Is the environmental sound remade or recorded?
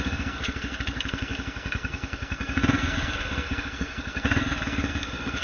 remade